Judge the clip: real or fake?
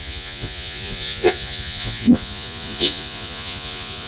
fake